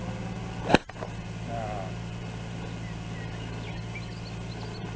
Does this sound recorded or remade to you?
recorded